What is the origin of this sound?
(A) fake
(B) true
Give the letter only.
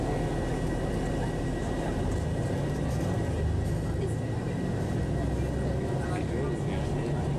B